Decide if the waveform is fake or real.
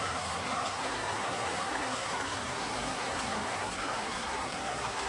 fake